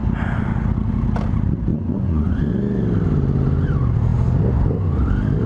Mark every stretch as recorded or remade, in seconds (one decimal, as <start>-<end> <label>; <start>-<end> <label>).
0.0-1.7 recorded; 1.7-2.5 remade; 2.5-5.5 recorded